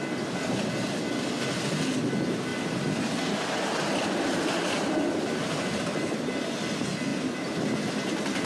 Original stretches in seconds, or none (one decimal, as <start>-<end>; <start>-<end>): 0.0-7.1; 7.8-8.5